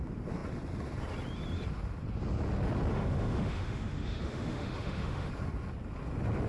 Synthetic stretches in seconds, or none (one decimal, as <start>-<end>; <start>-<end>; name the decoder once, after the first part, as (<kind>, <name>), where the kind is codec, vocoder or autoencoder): 2.9-5.3 (autoencoder, DAC-VAE)